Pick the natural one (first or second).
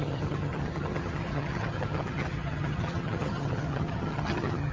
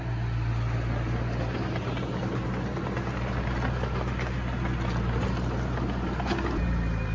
second